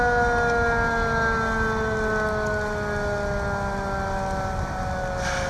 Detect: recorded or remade recorded